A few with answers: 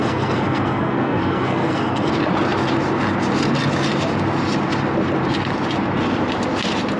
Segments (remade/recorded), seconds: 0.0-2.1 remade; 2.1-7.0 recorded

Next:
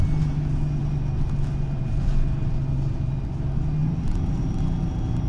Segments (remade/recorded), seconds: 0.0-3.8 recorded; 3.8-4.6 remade; 4.6-5.3 recorded

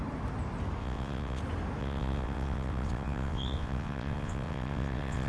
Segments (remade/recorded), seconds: 0.0-0.8 recorded; 0.8-1.4 remade; 1.4-1.8 recorded; 1.8-5.3 remade

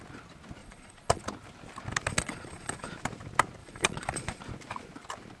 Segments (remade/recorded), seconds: 0.0-0.6 recorded; 0.6-1.2 remade; 1.2-2.1 recorded; 2.1-2.9 remade; 2.9-3.6 recorded; 3.6-4.4 remade; 4.4-5.4 recorded